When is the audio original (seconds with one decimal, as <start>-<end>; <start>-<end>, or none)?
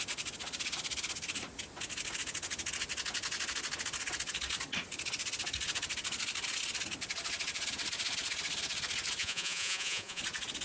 0.0-9.2; 10.2-10.6